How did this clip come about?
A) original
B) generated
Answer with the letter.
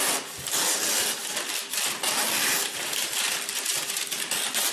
A